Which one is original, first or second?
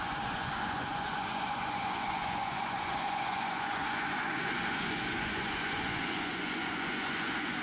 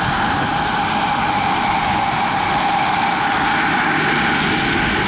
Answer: second